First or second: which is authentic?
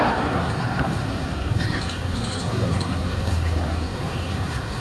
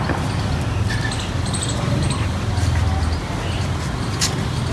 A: second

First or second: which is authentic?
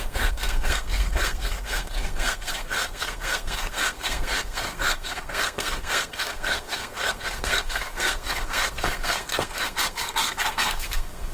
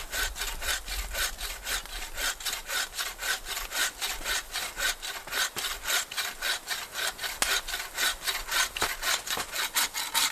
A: second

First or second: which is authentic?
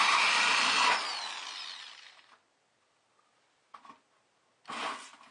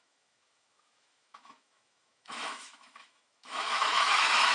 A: first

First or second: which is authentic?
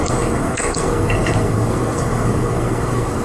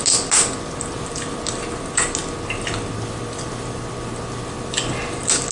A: second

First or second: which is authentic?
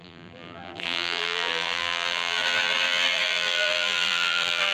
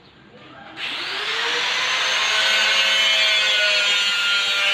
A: second